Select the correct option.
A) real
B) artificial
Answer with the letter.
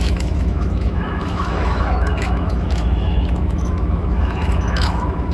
B